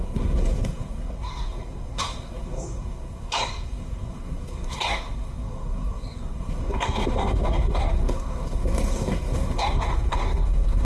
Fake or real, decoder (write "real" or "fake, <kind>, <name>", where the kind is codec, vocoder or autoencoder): fake, codec, SNAC